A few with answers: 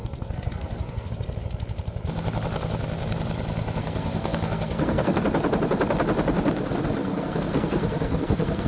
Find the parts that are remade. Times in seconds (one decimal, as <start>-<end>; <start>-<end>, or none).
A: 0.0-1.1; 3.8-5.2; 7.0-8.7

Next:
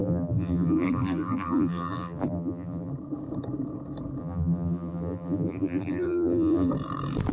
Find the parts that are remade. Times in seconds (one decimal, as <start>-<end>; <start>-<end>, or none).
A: 0.0-2.9; 4.2-6.7

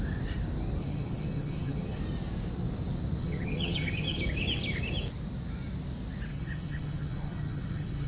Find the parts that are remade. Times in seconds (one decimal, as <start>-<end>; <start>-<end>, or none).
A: 0.8-2.0; 3.2-4.2; 6.3-8.1